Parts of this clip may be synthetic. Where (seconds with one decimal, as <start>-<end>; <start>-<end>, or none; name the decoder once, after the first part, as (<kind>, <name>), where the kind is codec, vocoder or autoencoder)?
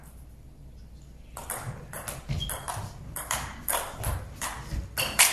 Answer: none